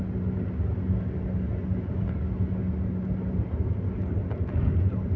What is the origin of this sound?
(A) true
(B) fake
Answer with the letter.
A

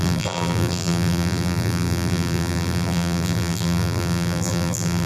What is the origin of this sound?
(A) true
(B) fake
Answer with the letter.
B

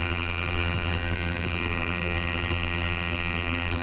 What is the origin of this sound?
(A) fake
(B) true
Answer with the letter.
A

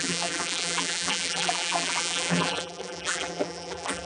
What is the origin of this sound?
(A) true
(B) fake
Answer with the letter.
B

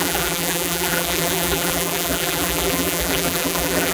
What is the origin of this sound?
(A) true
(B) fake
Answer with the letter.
B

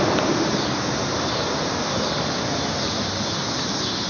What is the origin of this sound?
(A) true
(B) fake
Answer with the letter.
A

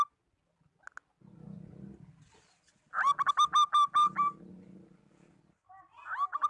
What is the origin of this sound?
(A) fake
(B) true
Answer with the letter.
B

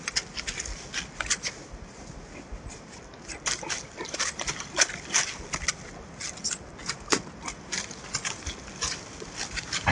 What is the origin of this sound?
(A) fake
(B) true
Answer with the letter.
B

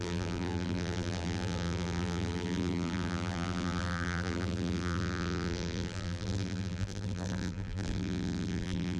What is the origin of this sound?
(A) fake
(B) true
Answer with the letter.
A